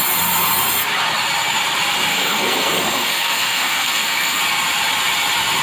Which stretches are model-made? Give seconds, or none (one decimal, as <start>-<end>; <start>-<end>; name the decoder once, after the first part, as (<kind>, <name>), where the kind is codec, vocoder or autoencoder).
2.1-4.4 (codec, SNAC)